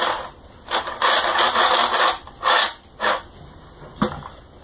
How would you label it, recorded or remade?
recorded